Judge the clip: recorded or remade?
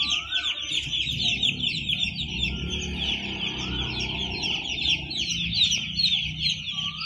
recorded